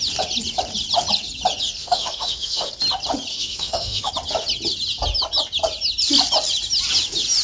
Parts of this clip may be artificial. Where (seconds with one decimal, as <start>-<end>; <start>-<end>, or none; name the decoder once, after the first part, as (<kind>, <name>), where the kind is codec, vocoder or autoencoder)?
1.8-2.7 (autoencoder, DAC-VAE); 3.3-4.1